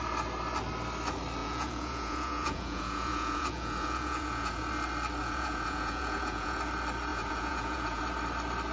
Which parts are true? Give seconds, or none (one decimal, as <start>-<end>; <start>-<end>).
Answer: 0.0-1.4; 4.7-5.2; 6.6-7.1; 8.0-8.7